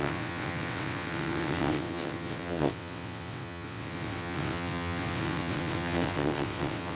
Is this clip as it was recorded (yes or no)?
no